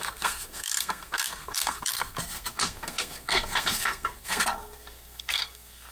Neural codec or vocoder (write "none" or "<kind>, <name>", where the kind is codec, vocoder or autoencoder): codec, SNAC